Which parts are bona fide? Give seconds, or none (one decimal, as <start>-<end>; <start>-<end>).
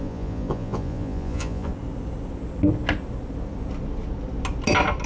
1.7-5.1